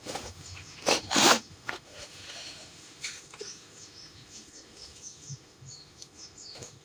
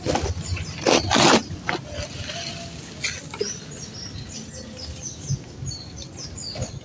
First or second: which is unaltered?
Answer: second